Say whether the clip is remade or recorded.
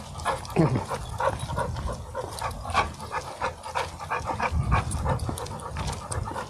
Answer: recorded